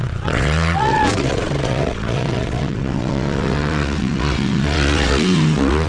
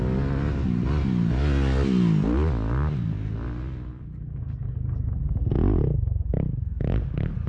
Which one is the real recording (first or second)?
second